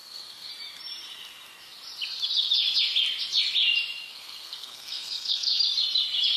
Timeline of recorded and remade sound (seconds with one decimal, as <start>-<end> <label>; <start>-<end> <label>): 0.0-0.5 remade; 0.5-4.1 recorded; 4.1-5.6 remade; 5.6-6.4 recorded